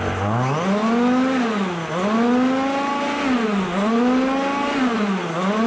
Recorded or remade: recorded